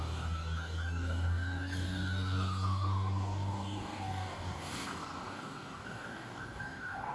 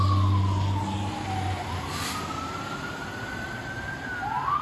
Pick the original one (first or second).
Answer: second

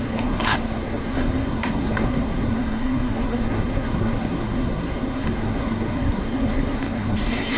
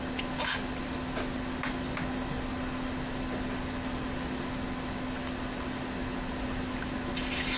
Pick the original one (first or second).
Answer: second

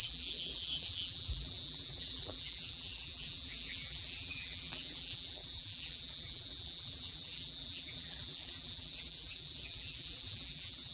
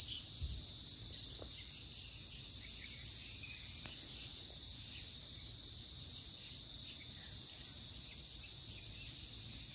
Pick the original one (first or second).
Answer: second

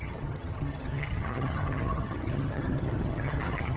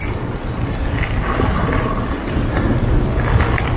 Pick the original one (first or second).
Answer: second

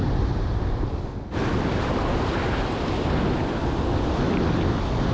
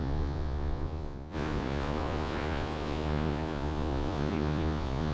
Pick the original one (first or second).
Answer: first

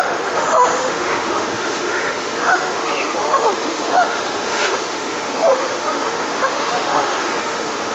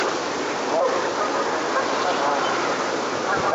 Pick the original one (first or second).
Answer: second